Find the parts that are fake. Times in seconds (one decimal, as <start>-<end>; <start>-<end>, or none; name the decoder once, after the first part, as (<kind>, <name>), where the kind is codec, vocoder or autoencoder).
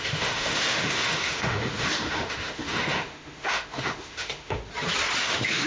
0.0-4.6 (autoencoder, DAC-VAE); 5.2-5.7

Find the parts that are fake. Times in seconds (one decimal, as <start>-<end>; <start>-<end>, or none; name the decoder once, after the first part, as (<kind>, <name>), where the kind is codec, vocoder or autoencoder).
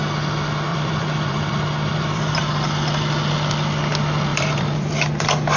0.7-1.5 (vocoder, BigVGAN v2); 1.9-2.4; 4.3-4.9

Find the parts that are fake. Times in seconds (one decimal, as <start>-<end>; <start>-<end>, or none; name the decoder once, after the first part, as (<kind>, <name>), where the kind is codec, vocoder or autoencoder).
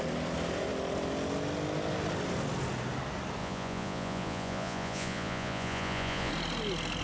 3.4-6.3 (vocoder, Vocos)